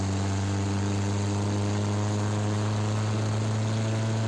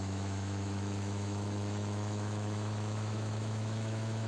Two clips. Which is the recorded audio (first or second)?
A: first